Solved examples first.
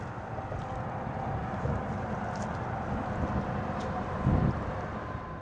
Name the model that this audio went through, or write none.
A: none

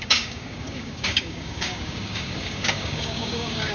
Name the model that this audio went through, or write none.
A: codec, DAC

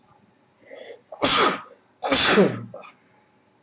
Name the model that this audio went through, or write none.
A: none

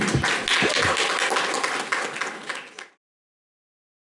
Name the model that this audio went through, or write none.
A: none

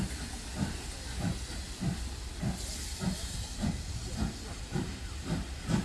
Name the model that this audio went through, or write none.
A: none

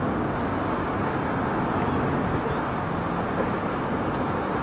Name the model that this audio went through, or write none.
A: none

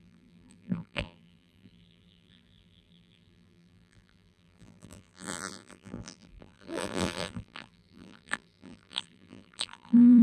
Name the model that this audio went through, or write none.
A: vocoder, BigVGAN v2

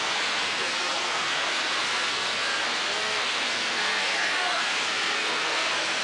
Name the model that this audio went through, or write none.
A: codec, SNAC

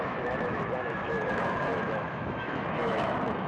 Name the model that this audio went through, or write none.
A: autoencoder, DAC-VAE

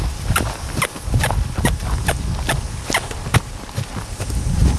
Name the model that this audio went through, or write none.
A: none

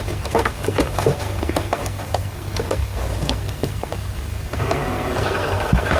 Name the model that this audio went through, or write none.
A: codec, SNAC